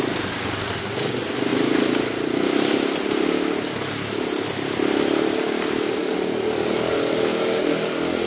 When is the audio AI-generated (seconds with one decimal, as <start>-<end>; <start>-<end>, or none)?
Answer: 6.0-8.3